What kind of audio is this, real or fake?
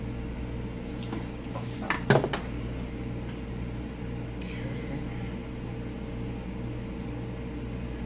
real